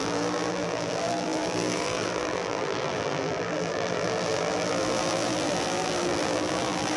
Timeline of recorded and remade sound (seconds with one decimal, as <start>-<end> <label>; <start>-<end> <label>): 0.0-7.0 remade